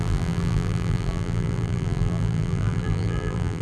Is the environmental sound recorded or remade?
remade